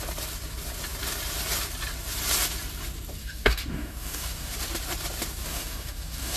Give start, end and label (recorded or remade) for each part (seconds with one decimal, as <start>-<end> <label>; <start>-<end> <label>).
0.0-3.2 recorded; 3.2-4.5 remade; 4.5-5.4 recorded; 5.4-6.4 remade